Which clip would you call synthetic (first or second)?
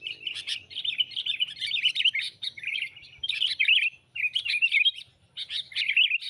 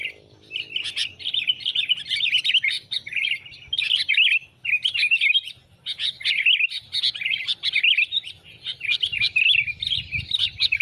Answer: first